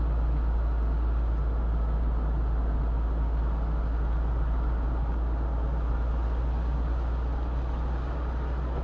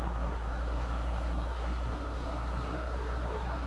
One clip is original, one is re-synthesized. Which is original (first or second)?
first